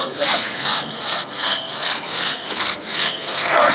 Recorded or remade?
remade